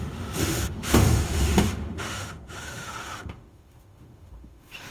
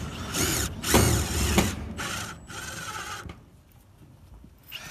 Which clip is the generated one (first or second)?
first